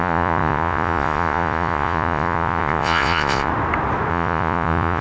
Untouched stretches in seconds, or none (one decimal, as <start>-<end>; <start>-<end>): 3.5-4.1